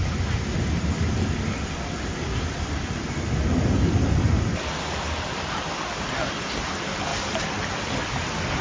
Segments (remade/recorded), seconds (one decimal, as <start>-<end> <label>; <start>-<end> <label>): 0.0-8.6 recorded